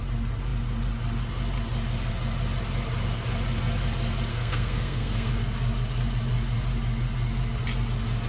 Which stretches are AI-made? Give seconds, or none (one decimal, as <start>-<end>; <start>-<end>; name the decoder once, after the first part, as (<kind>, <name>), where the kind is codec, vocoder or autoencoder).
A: 4.3-5.3 (codec, SNAC)